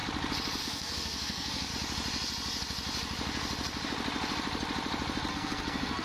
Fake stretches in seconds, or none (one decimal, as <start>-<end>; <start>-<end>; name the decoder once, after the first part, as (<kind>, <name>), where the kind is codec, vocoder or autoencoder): 0.6-1.7 (codec, SNAC); 5.3-6.0